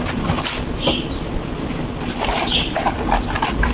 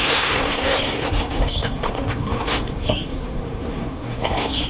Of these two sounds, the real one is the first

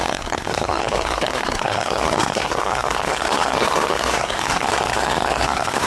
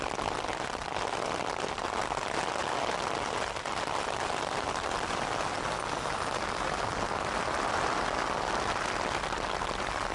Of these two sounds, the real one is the second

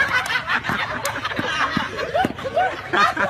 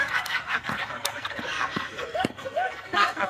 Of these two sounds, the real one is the first